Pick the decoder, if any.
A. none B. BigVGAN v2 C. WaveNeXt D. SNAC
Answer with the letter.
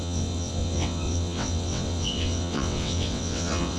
C